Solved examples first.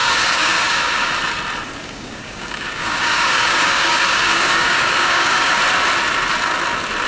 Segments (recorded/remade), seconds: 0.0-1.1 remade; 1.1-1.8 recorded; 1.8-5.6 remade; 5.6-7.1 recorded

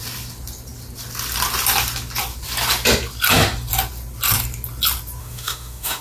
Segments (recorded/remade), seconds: 0.0-5.2 recorded; 5.2-6.0 remade

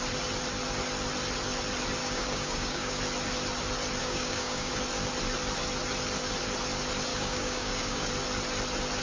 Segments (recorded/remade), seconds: 0.0-2.0 recorded; 2.0-3.0 remade; 3.0-4.0 recorded; 4.0-4.7 remade; 4.7-7.1 recorded; 7.1-8.1 remade; 8.1-9.0 recorded

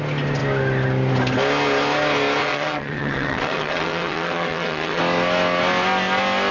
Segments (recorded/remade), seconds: 0.0-2.4 recorded; 2.4-5.0 remade; 5.0-6.5 recorded